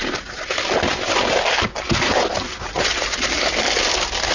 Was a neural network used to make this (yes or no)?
no